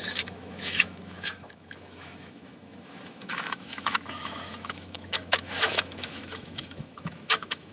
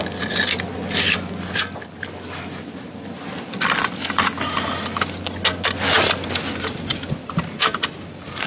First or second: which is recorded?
second